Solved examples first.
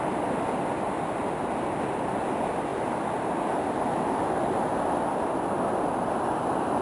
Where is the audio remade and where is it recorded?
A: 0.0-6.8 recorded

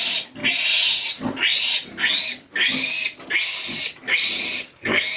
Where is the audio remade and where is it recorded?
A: 0.0-5.2 recorded

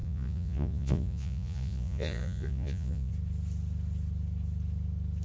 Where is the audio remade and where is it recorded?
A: 0.0-3.1 remade; 3.1-5.2 recorded

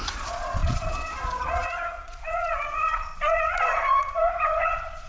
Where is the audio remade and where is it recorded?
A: 0.0-5.1 remade

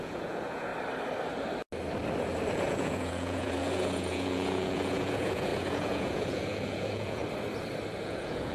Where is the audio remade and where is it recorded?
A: 0.0-0.7 remade; 0.7-2.5 recorded; 2.5-7.2 remade; 7.2-8.0 recorded; 8.0-8.5 remade

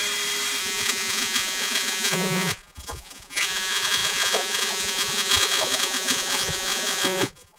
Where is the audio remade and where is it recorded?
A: 0.0-0.6 recorded; 0.6-7.6 remade

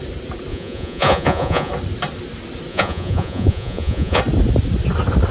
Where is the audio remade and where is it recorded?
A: 0.0-0.5 recorded; 0.5-1.7 remade; 1.7-2.7 recorded; 2.7-4.2 remade; 4.2-5.3 recorded

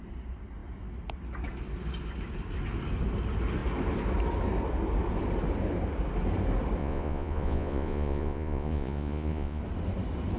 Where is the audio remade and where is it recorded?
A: 0.0-6.8 recorded; 6.8-9.6 remade; 9.6-10.4 recorded